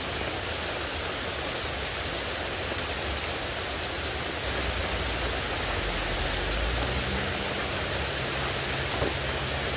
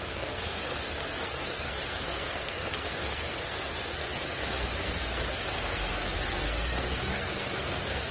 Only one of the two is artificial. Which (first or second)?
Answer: second